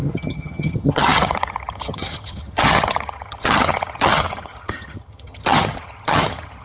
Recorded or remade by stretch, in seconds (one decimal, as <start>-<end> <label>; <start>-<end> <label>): 0.0-6.6 remade